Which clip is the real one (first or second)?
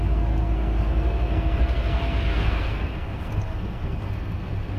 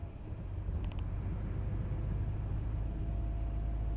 second